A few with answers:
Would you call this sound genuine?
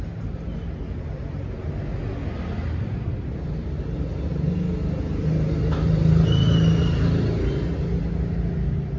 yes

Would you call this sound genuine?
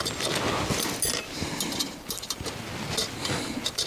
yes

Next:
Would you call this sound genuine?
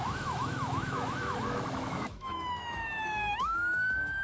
no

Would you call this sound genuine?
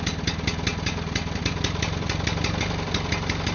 yes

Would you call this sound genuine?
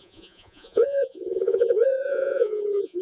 no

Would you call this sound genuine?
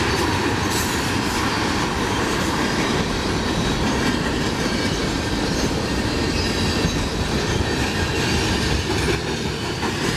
no